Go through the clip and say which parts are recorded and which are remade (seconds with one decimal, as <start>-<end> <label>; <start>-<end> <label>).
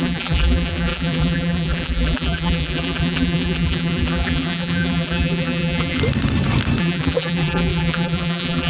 0.0-6.0 remade; 6.0-6.8 recorded; 6.8-8.7 remade